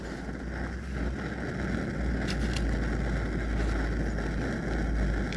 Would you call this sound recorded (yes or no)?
yes